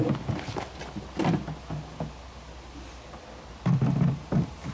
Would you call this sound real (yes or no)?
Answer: yes